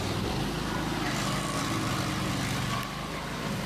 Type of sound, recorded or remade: recorded